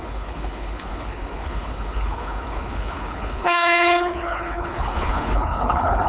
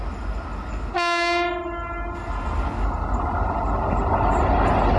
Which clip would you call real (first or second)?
second